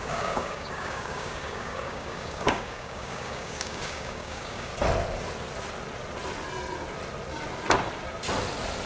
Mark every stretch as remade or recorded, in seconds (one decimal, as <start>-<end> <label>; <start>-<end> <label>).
0.0-4.7 remade; 4.7-8.9 recorded

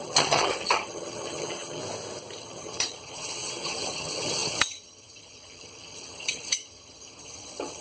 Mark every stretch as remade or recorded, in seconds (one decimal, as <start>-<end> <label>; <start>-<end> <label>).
0.0-1.8 remade; 1.8-2.4 recorded; 2.4-7.8 remade

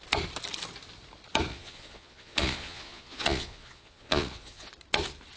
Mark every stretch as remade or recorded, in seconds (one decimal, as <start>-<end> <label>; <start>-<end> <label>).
0.0-1.5 recorded; 1.5-4.7 remade; 4.7-5.4 recorded

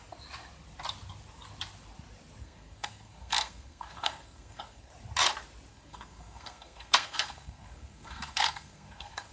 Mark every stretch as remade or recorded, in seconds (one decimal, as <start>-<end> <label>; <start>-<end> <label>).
0.0-2.4 recorded; 2.4-4.9 remade; 4.9-5.7 recorded; 5.7-9.3 remade

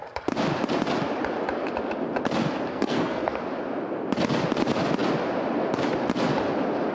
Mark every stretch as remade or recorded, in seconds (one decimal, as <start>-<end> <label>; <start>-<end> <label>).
0.0-2.7 recorded; 2.7-3.4 remade; 3.4-6.9 recorded

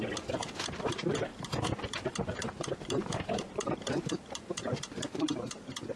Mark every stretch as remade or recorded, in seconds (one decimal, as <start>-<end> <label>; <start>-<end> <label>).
0.0-1.3 recorded; 1.3-4.9 remade; 4.9-6.0 recorded